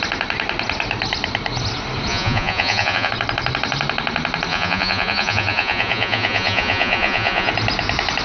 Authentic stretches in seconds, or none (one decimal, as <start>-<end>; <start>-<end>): 0.0-2.1; 3.1-4.5; 7.5-8.2